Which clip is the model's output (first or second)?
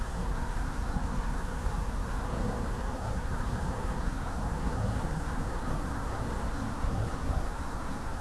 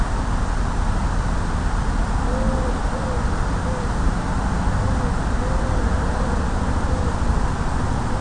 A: first